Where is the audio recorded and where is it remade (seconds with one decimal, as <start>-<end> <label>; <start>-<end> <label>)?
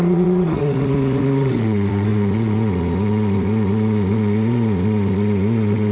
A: 0.0-5.9 remade